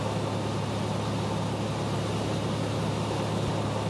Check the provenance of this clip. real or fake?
real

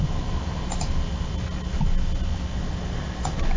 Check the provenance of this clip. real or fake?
real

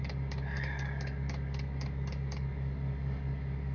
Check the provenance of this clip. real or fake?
fake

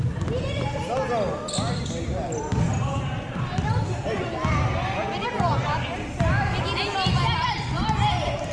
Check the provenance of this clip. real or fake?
real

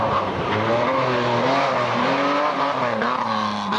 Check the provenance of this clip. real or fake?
real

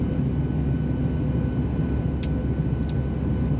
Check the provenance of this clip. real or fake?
real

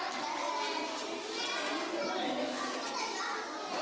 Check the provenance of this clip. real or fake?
real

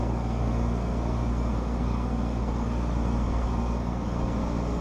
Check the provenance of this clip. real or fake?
fake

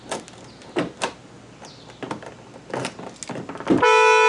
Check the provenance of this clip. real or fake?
real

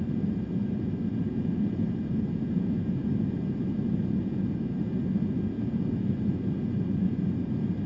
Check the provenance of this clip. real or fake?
real